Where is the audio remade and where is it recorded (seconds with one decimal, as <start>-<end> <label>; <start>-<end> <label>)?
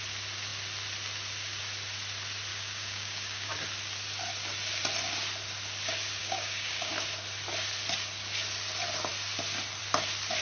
0.0-2.5 recorded; 2.5-3.5 remade; 3.5-6.2 recorded; 6.2-6.9 remade; 6.9-10.4 recorded